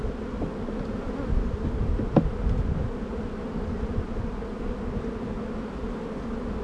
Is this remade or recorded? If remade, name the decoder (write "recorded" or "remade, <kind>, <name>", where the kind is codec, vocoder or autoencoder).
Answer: recorded